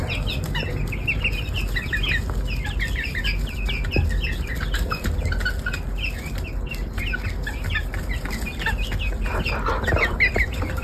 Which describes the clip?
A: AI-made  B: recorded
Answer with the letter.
B